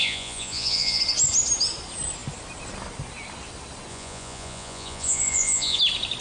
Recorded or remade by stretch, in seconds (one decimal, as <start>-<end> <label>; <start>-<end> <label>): 0.0-1.0 remade; 1.0-3.9 recorded; 3.9-5.8 remade; 5.8-6.2 recorded